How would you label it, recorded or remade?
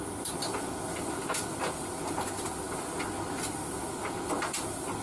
recorded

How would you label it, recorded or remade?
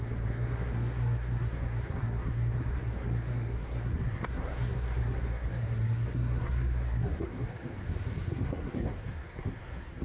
remade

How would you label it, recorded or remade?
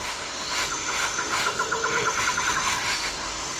remade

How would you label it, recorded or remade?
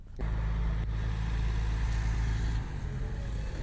recorded